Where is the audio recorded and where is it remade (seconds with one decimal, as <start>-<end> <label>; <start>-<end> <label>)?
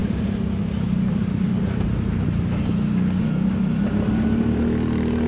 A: 0.0-5.3 recorded